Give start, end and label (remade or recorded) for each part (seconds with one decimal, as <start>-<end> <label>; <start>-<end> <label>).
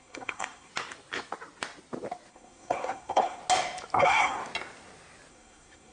0.0-0.7 remade; 0.7-2.3 recorded; 2.3-3.4 remade; 3.4-4.0 recorded; 4.0-4.4 remade; 4.4-5.3 recorded; 5.3-5.9 remade